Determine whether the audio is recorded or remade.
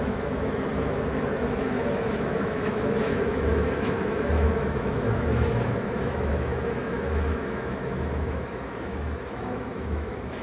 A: remade